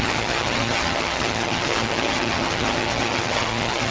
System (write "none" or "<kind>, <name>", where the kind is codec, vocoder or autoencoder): vocoder, HiFi-GAN